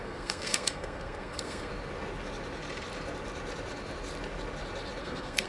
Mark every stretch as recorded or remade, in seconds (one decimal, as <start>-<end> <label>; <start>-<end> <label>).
0.0-1.7 remade; 1.7-5.0 recorded; 5.0-5.5 remade